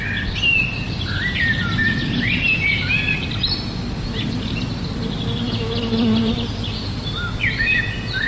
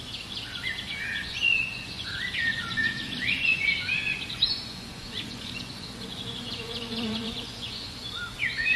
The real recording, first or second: first